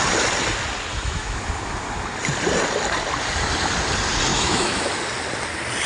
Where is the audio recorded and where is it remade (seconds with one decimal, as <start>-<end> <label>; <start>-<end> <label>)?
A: 0.0-0.9 recorded; 0.9-1.4 remade; 1.4-4.3 recorded; 4.3-4.9 remade; 4.9-5.9 recorded